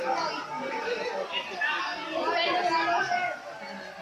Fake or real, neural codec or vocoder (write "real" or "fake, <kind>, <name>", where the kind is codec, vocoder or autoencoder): real